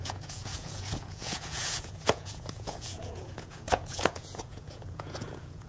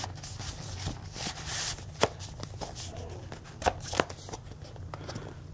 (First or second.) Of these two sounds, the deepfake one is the first